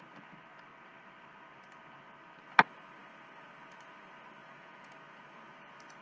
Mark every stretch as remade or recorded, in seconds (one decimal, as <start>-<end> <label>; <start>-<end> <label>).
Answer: 0.0-4.4 recorded; 4.4-4.9 remade; 4.9-6.0 recorded